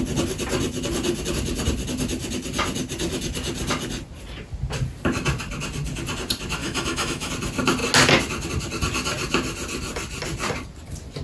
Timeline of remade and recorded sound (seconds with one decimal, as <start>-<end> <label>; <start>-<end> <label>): 0.0-6.6 recorded; 6.6-7.3 remade; 7.3-11.2 recorded